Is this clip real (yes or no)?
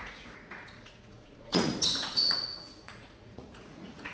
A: no